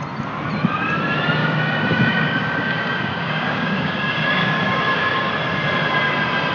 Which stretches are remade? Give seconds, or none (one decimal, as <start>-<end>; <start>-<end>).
1.4-5.3